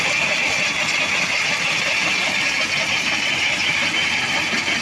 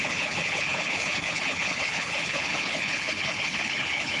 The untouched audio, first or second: first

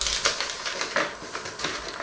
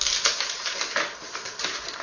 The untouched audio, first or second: first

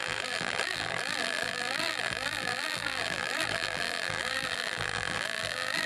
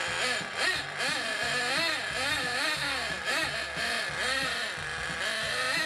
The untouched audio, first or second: second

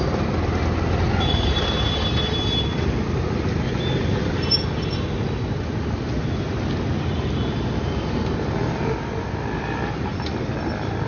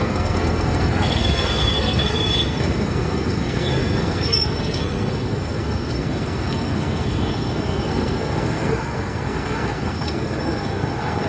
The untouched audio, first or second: first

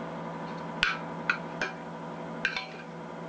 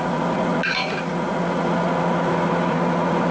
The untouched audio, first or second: first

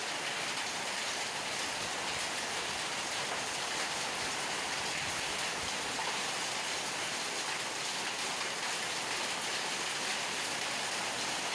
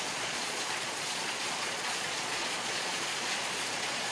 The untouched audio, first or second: first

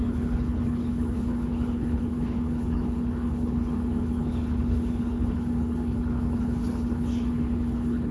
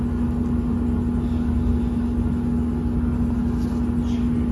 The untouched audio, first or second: second